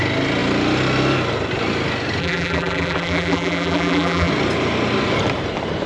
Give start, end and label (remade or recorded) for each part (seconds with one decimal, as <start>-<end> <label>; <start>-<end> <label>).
0.0-2.2 recorded; 2.2-4.3 remade; 4.3-5.9 recorded